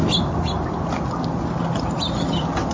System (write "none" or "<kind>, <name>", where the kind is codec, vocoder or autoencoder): none